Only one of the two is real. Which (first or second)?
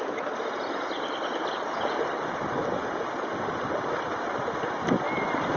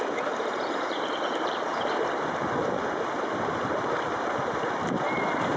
first